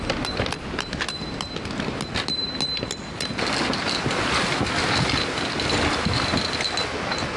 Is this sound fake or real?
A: real